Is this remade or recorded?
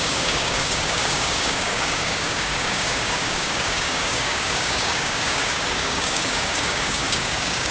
remade